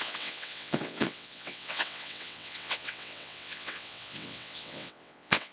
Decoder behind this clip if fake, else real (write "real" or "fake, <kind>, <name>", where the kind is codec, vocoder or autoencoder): fake, vocoder, WaveNeXt